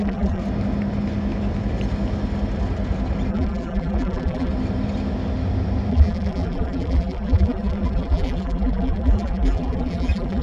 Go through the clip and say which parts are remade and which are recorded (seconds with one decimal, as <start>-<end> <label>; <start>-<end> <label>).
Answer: 0.0-0.4 remade; 0.4-3.3 recorded; 3.3-4.5 remade; 4.5-5.9 recorded; 5.9-10.4 remade